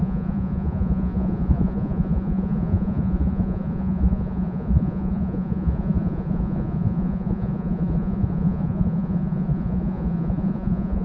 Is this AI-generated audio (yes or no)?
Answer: yes